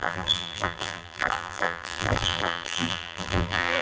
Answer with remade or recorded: remade